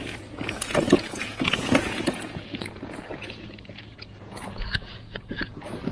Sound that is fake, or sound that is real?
fake